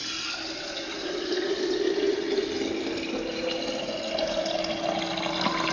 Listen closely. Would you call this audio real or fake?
real